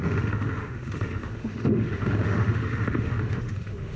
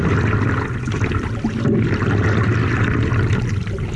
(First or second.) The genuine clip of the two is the second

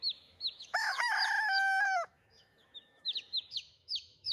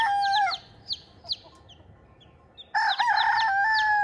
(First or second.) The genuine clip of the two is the second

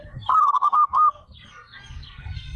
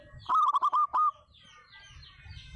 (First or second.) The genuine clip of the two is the second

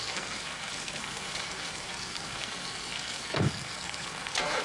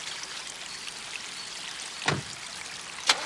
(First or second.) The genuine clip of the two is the second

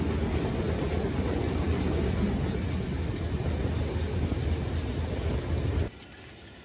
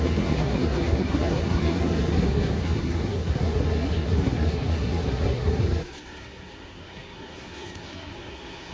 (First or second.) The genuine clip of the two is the first